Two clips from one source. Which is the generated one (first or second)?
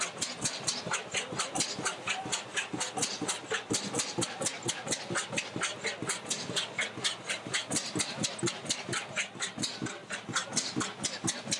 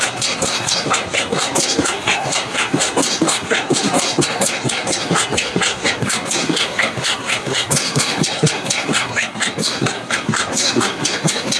second